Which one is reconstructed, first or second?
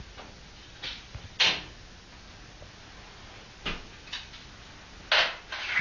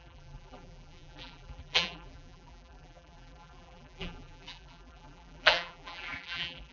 second